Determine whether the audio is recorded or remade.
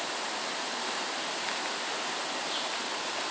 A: recorded